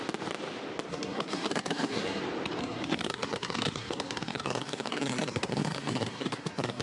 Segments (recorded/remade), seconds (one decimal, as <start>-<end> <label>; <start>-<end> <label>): 0.0-0.9 recorded; 0.9-2.2 remade; 2.2-2.6 recorded; 2.6-6.8 remade